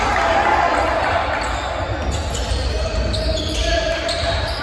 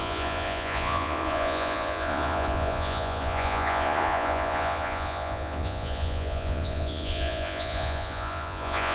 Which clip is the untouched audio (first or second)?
first